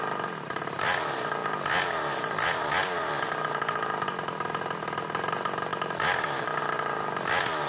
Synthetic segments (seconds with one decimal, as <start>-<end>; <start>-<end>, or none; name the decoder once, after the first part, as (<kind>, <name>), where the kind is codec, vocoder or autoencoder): none